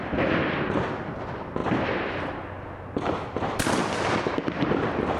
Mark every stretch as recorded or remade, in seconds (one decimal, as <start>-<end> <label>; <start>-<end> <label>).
0.0-5.2 recorded